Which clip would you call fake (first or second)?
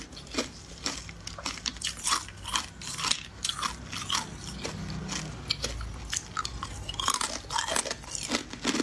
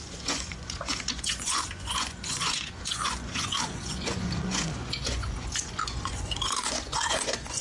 second